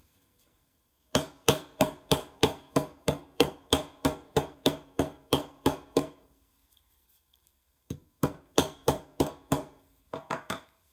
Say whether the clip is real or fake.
fake